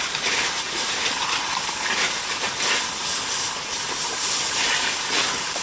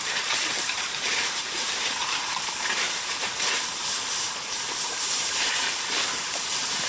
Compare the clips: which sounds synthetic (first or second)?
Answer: second